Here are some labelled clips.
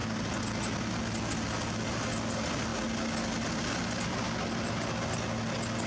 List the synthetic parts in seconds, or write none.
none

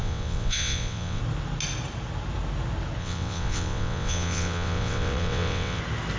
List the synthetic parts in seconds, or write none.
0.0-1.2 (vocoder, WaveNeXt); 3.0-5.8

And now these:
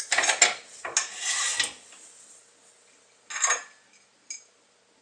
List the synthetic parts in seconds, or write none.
none

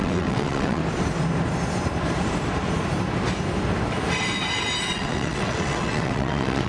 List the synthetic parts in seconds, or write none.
0.0-0.8 (vocoder, WaveNeXt); 4.8-6.7

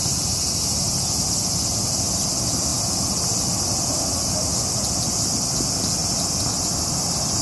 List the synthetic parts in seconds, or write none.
none

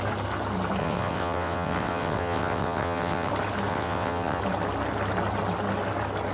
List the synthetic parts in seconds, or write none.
0.8-3.3 (vocoder, WaveNeXt); 3.7-4.4

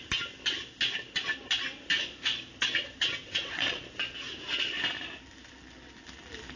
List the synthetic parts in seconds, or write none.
3.2-3.8 (vocoder, WaveNeXt)

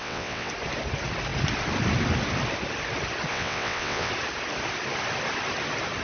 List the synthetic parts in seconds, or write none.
0.0-0.5 (vocoder, WaveNeXt); 3.3-4.1